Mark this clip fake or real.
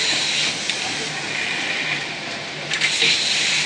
real